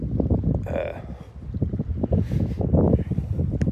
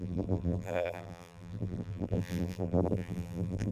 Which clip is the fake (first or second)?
second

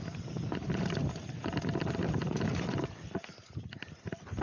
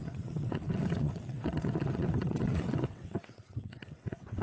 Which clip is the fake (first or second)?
second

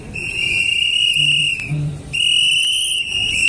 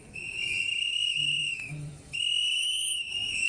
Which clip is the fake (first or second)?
second